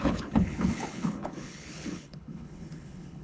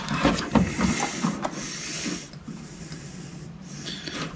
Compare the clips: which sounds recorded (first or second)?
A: second